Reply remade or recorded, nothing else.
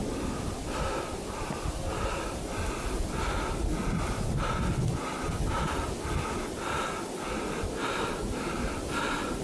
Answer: recorded